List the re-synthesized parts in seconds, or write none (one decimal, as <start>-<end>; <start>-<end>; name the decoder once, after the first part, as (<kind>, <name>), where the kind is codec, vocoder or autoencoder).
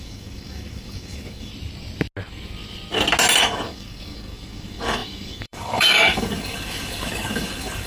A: 0.0-1.5 (codec, DAC); 3.4-7.9